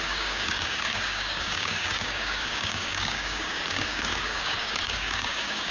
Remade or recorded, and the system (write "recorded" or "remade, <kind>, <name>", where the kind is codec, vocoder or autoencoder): remade, codec, DAC